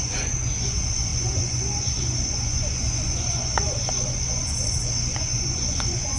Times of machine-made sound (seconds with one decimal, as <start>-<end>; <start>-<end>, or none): 0.0-6.2